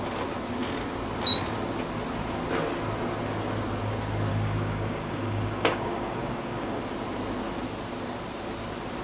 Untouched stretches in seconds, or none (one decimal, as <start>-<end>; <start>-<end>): 0.0-4.3; 6.8-9.0